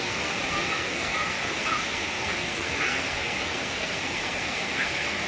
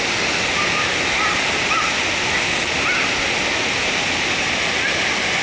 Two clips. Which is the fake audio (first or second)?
first